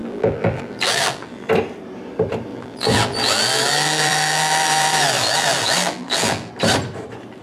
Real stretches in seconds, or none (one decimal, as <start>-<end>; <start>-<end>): 1.5-2.5; 6.5-7.4